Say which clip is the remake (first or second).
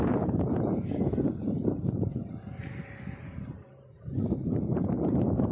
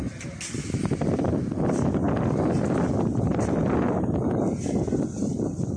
first